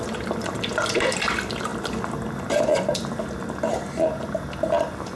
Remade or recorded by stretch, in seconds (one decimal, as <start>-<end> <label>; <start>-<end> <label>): 0.0-5.2 recorded